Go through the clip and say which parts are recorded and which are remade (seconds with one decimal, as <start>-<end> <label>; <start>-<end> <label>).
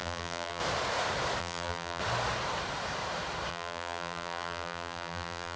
0.0-0.6 remade; 0.6-1.4 recorded; 1.4-2.0 remade; 2.0-3.5 recorded; 3.5-5.6 remade